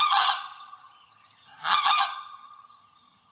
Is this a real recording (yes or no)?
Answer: no